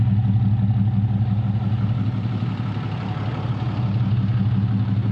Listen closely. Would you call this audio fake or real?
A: real